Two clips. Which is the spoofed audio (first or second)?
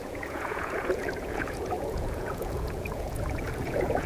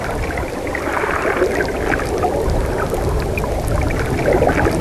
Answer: first